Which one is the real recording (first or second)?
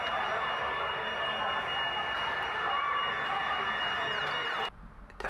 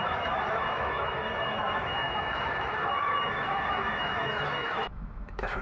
first